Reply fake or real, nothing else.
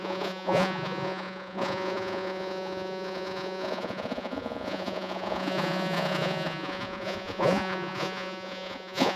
fake